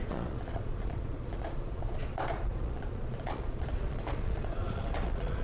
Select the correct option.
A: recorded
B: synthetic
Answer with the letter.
B